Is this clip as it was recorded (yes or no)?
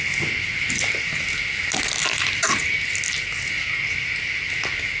yes